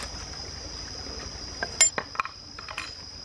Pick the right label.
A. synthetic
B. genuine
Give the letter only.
B